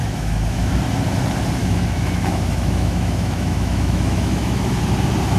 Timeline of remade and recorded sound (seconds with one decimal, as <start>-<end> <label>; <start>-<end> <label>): 0.0-0.8 remade; 0.8-1.6 recorded; 1.6-4.8 remade; 4.8-5.4 recorded